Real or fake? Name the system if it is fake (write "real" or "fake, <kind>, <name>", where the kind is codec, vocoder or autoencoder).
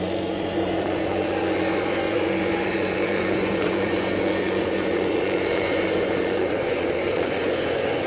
fake, vocoder, Vocos